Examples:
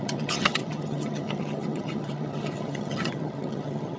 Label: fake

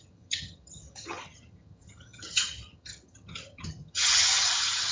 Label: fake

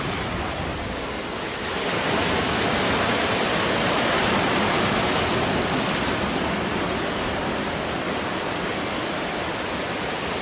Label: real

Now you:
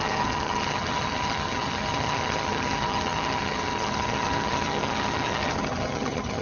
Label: fake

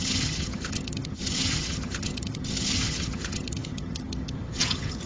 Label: fake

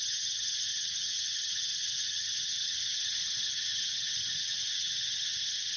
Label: fake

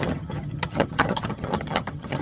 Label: fake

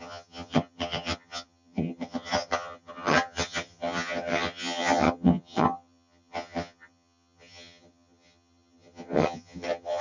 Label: fake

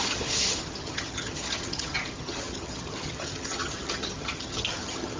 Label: fake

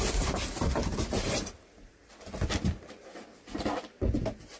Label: real